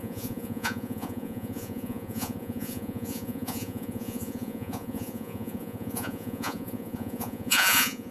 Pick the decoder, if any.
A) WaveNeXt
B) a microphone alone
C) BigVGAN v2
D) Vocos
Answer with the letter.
D